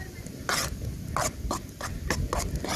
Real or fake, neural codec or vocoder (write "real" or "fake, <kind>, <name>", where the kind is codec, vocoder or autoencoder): real